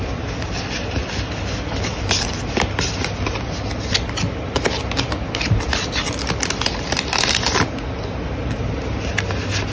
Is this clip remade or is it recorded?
recorded